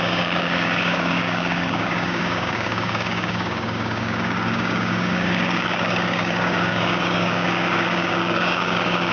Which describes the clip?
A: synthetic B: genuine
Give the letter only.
A